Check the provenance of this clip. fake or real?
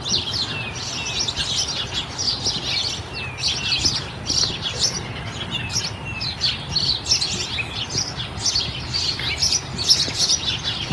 real